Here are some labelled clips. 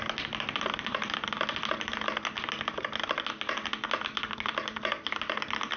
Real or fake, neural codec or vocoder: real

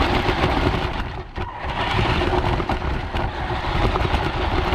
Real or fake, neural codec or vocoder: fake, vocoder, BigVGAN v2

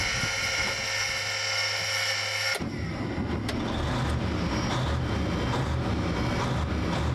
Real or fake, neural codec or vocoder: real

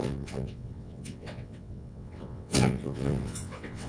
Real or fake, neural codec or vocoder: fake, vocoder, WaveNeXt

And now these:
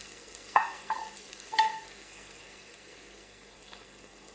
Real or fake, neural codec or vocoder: fake, codec, SNAC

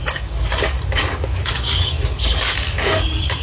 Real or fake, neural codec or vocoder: fake, codec, DAC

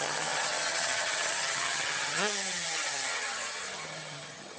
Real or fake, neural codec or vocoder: fake, vocoder, HiFi-GAN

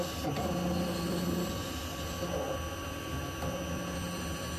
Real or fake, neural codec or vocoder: real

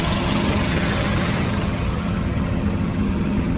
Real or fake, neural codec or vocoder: fake, vocoder, HiFi-GAN